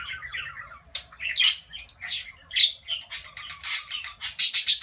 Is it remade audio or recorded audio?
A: recorded